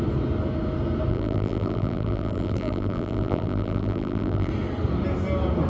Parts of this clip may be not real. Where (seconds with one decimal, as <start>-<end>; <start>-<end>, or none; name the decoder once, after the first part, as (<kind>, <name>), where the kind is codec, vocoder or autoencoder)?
1.1-4.5 (vocoder, BigVGAN v2)